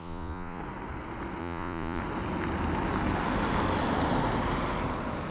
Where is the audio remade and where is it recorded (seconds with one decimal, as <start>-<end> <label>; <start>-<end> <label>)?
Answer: 0.0-0.6 remade; 0.6-1.4 recorded; 1.4-2.0 remade; 2.0-5.3 recorded